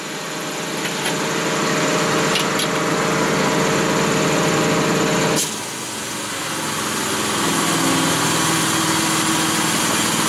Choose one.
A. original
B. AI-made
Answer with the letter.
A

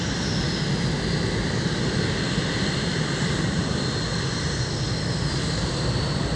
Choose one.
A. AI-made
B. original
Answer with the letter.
B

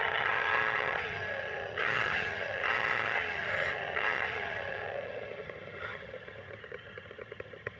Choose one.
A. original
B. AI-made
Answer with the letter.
B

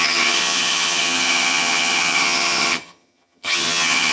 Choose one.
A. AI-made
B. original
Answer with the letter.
A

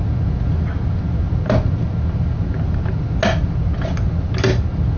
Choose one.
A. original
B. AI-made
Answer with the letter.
A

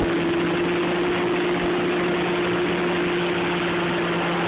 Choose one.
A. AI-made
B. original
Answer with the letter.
B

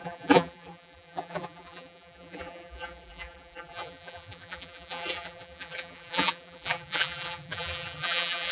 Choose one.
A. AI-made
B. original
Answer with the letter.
A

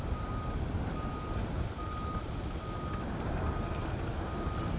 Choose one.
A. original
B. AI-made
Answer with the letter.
A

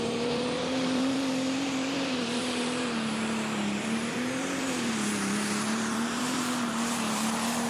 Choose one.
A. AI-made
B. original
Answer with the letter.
A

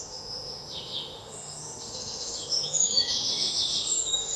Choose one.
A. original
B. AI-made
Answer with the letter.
B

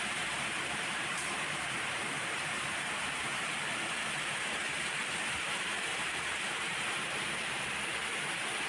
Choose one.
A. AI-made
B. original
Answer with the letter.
A